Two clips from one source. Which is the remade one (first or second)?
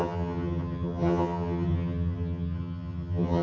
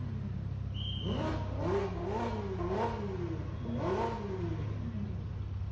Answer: first